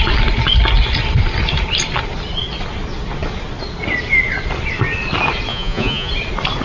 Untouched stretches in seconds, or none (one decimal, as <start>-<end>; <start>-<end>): 0.0-5.5; 6.1-6.6